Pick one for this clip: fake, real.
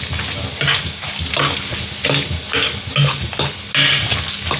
real